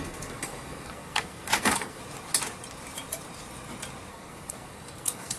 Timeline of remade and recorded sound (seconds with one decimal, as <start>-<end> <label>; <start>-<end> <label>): 0.0-2.0 remade; 2.0-4.1 recorded; 4.1-5.4 remade

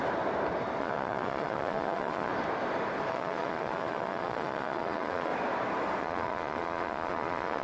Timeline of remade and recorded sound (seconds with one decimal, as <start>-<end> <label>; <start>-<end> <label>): 0.0-0.8 recorded; 0.8-2.3 remade; 2.3-3.1 recorded; 3.1-5.3 remade; 5.3-6.0 recorded; 6.0-7.6 remade

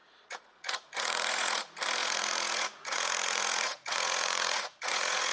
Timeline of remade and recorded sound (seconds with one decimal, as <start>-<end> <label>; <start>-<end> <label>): 0.0-1.6 remade; 1.6-2.0 recorded; 2.0-5.3 remade

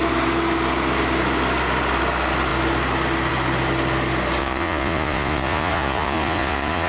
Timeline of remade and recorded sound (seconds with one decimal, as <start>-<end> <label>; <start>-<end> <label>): 0.0-4.4 recorded; 4.4-6.9 remade

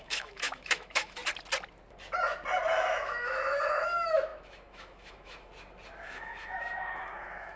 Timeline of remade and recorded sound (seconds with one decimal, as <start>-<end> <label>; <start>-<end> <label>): 0.0-1.2 remade; 1.2-2.7 recorded; 2.7-5.5 remade; 5.5-6.0 recorded; 6.0-7.6 remade